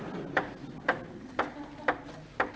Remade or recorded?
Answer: recorded